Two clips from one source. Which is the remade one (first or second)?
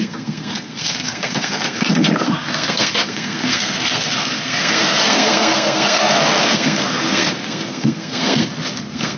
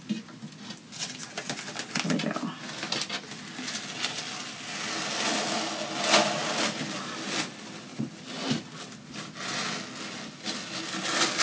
first